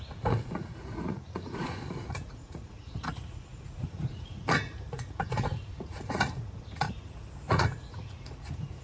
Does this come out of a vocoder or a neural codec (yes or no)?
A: yes